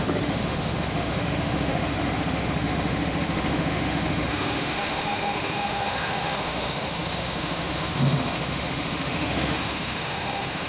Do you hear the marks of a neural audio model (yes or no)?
yes